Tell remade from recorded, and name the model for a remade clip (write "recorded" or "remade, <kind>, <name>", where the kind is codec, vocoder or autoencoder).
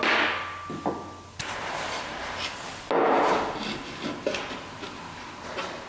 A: recorded